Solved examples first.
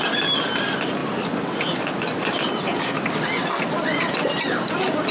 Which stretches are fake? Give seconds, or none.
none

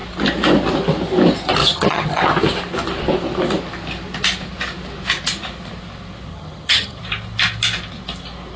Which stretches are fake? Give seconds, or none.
1.6-2.2 (vocoder, HiFi-GAN); 6.3-7.0

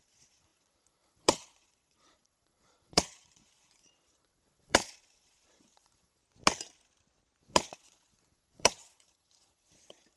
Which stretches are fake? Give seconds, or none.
0.0-6.2 (vocoder, Vocos); 7.4-10.2

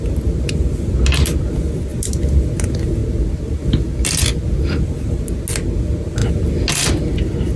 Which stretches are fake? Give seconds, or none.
none

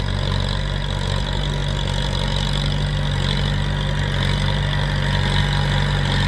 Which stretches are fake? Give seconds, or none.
none

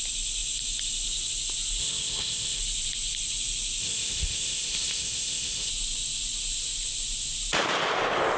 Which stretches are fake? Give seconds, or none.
1.8-2.6 (codec, ZipCodec); 3.8-5.7

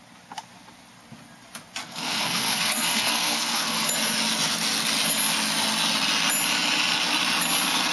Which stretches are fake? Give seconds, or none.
1.8-3.9 (codec, SNAC)